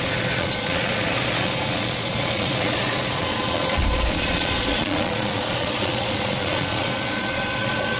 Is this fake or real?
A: fake